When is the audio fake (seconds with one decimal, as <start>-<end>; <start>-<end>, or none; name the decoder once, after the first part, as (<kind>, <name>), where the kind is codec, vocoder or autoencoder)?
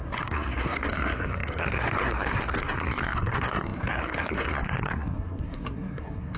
0.0-6.4 (codec, SNAC)